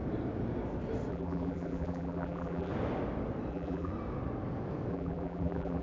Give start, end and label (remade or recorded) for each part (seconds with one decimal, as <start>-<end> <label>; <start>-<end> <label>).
0.0-1.1 recorded; 1.1-2.7 remade; 2.7-3.5 recorded; 3.5-3.9 remade; 3.9-4.9 recorded; 4.9-5.8 remade